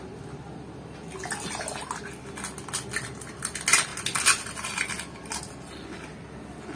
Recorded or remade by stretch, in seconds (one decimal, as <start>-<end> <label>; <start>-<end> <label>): 0.0-6.8 recorded